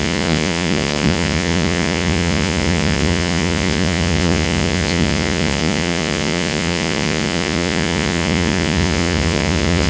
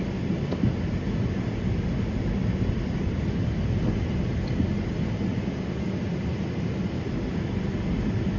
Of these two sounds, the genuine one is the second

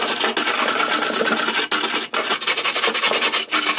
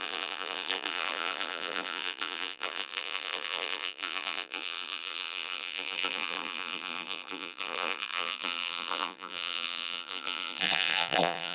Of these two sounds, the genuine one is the first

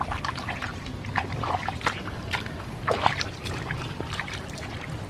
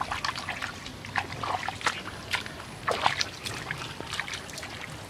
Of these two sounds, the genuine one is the second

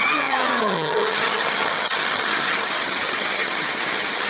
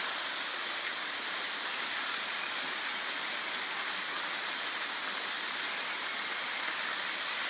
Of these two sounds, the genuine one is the second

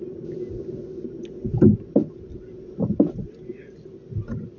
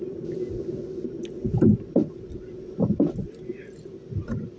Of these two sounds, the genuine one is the first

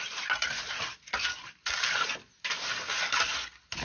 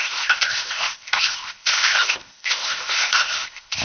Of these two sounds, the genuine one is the first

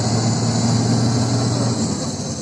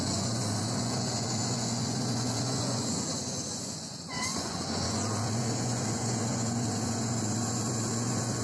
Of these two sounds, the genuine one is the first